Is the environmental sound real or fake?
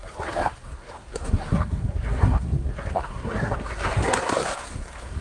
fake